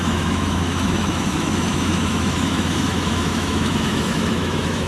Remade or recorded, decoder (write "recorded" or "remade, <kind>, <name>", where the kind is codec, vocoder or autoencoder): remade, autoencoder, DAC-VAE